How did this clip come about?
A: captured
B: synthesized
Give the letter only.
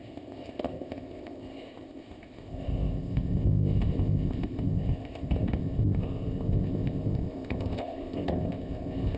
B